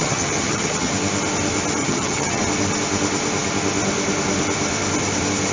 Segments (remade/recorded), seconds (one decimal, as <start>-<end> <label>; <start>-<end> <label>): 0.0-0.9 remade; 0.9-1.8 recorded; 1.8-2.4 remade; 2.4-5.5 recorded